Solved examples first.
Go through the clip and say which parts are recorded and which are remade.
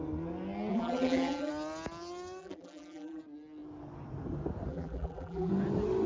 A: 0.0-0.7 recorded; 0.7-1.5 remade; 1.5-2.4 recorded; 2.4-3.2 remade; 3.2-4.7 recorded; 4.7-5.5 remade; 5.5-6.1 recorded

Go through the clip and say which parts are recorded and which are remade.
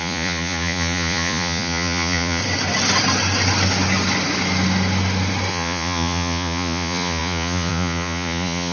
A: 0.0-2.4 remade; 2.4-5.5 recorded; 5.5-8.7 remade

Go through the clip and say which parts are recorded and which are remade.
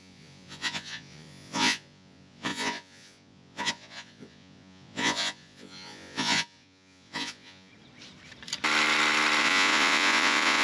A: 0.0-7.7 remade; 7.7-9.4 recorded; 9.4-10.6 remade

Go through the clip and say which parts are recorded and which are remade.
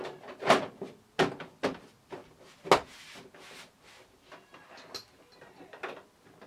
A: 0.0-6.5 recorded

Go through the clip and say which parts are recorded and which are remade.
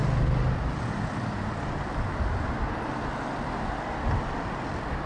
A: 0.0-5.1 recorded